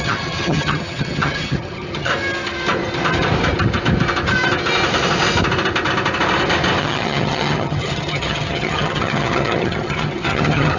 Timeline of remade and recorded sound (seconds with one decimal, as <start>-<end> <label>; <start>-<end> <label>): 0.0-2.1 remade; 2.1-6.8 recorded; 6.8-10.8 remade